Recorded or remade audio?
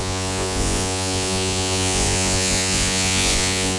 remade